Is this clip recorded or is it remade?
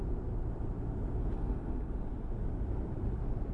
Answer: recorded